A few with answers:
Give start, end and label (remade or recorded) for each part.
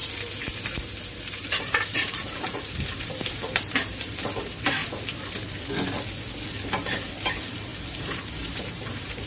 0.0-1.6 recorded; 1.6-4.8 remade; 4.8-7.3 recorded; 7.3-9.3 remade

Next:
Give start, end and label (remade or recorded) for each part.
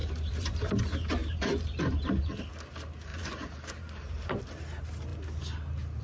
0.0-0.7 remade; 0.7-1.2 recorded; 1.2-2.5 remade; 2.5-3.1 recorded; 3.1-4.4 remade; 4.4-6.0 recorded